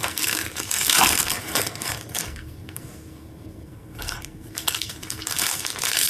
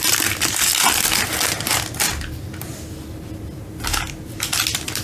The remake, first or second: first